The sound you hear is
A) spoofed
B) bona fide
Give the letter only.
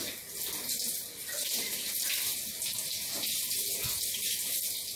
B